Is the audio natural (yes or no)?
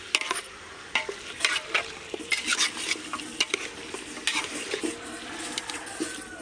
yes